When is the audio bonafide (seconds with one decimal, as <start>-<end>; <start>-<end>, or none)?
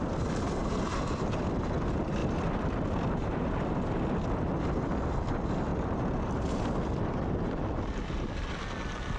0.0-0.6; 1.4-2.2; 3.8-5.7; 8.6-9.2